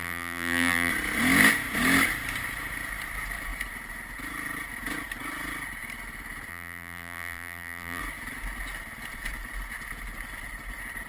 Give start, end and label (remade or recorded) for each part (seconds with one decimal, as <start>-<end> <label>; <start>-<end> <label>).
0.0-0.9 remade; 0.9-6.5 recorded; 6.5-8.0 remade; 8.0-11.1 recorded